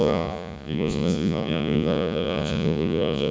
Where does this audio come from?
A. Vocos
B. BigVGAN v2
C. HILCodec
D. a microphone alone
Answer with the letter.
A